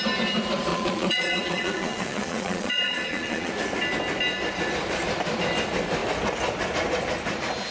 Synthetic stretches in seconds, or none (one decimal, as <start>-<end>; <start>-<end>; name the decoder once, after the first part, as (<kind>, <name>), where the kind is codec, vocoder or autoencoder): 0.7-3.5 (vocoder, Vocos)